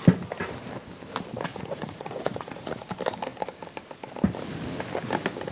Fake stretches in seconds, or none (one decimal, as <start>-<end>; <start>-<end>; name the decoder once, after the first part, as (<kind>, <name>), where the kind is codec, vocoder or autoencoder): 1.5-2.9 (vocoder, Vocos)